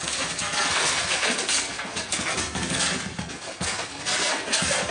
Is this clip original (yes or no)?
no